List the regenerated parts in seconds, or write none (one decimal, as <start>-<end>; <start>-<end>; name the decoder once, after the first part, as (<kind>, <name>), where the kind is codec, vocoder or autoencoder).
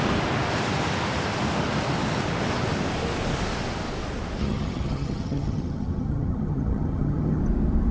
4.4-7.4 (vocoder, HiFi-GAN)